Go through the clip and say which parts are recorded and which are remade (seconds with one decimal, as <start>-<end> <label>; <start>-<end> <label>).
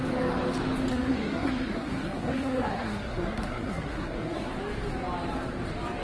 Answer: 0.0-0.9 recorded; 0.9-4.5 remade; 4.5-6.0 recorded